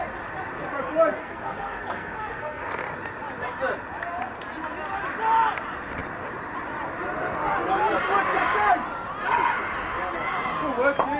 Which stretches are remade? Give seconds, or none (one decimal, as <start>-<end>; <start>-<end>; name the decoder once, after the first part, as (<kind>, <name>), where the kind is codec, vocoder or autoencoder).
1.2-2.8 (codec, SNAC)